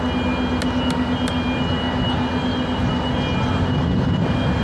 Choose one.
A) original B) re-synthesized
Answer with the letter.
A